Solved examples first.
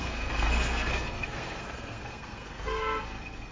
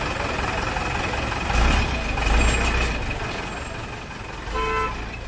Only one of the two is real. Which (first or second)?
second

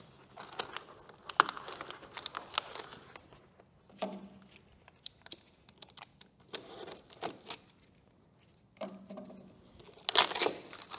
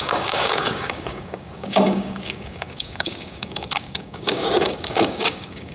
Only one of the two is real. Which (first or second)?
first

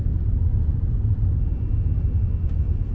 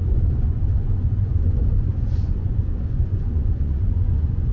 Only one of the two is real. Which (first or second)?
first